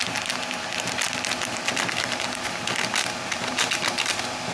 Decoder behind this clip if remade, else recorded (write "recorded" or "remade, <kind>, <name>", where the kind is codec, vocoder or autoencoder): recorded